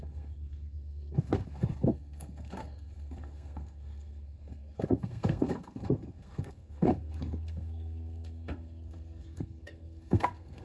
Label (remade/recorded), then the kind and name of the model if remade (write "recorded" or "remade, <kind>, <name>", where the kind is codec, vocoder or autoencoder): remade, codec, SNAC